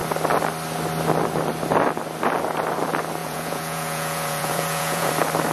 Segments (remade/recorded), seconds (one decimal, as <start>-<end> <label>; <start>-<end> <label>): 0.0-3.2 recorded; 3.2-5.1 remade; 5.1-5.5 recorded